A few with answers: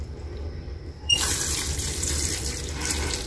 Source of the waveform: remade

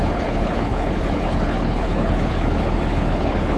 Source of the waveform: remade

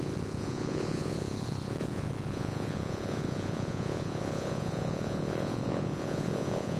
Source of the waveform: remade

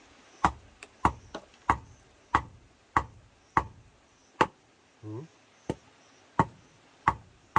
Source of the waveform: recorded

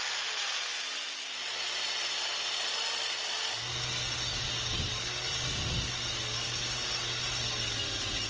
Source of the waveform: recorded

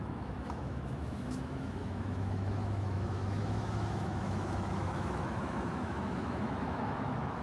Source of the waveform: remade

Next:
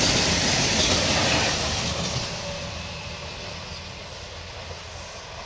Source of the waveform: recorded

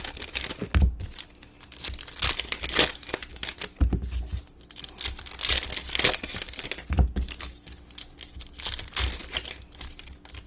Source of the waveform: recorded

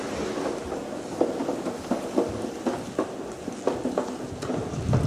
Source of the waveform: recorded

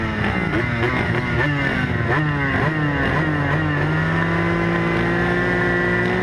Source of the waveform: recorded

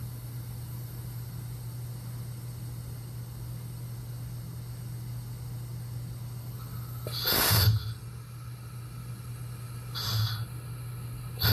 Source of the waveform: recorded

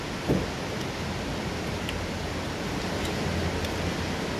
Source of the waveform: recorded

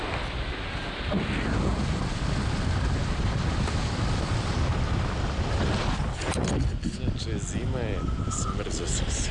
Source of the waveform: recorded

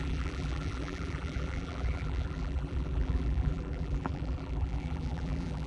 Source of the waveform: remade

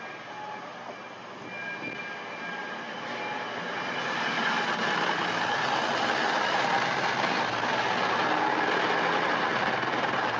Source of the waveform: recorded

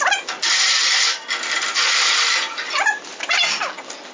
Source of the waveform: remade